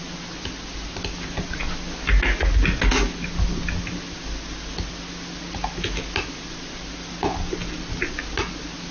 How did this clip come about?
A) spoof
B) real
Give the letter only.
B